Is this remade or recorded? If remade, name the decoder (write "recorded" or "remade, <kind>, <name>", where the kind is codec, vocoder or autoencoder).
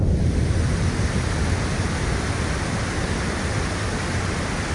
recorded